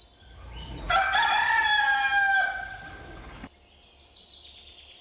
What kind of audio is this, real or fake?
real